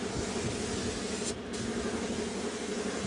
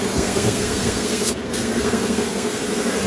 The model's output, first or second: second